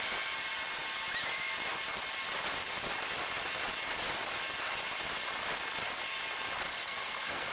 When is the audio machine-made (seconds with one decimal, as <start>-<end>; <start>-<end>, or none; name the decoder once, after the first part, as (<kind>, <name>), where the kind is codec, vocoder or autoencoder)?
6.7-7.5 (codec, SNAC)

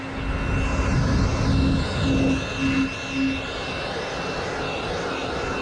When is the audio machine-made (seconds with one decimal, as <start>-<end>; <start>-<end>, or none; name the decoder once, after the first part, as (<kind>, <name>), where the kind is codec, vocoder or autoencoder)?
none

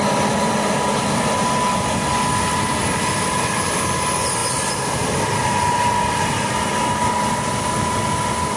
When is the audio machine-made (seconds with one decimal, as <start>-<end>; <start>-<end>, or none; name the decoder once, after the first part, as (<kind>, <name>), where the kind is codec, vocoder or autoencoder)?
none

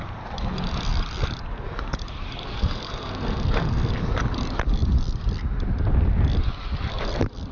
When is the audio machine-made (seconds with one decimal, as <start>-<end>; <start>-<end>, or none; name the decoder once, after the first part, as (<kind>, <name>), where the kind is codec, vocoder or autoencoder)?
2.4-3.9 (codec, SNAC)

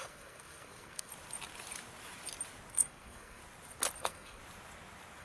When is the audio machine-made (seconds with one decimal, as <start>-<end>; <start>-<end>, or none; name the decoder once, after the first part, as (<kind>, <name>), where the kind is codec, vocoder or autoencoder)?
0.0-1.1 (codec, SNAC); 2.7-3.4; 4.0-4.4